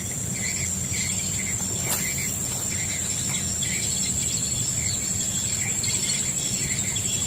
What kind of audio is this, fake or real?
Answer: real